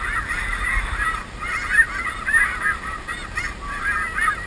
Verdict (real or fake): real